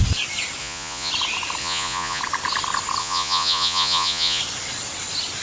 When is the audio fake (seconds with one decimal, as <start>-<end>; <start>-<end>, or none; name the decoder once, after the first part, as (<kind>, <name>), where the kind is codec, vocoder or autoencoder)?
0.6-1.1 (vocoder, Vocos); 1.6-2.2; 3.0-4.4